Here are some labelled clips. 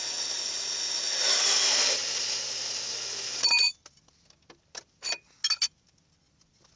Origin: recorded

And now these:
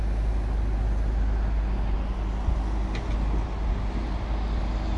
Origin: recorded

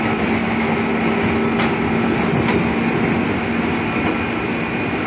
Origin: recorded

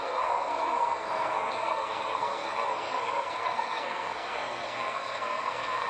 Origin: remade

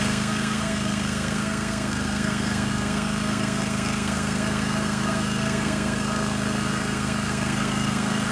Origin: remade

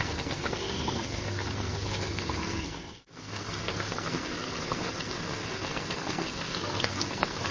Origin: remade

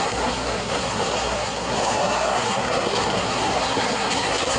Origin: remade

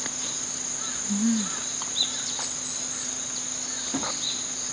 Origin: recorded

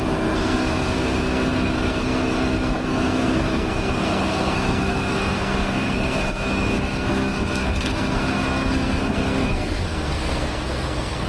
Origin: remade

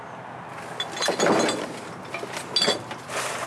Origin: recorded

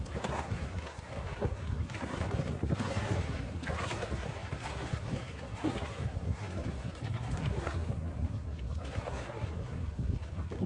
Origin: remade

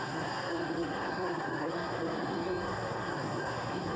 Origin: remade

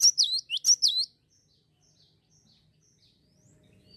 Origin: recorded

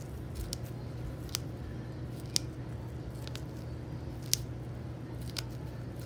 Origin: recorded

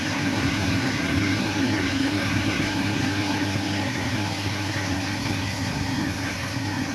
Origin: remade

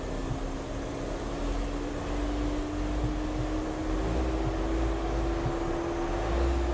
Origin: recorded